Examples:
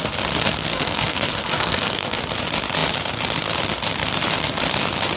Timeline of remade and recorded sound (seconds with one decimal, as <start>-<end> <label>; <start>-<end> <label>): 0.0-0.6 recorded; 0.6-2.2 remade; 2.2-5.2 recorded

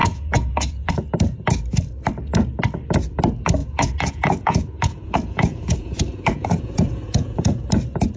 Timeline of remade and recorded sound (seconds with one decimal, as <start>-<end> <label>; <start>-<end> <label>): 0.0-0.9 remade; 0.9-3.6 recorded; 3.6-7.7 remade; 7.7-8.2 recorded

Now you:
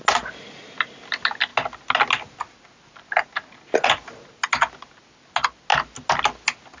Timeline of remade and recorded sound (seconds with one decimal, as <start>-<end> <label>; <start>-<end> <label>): 0.0-6.8 recorded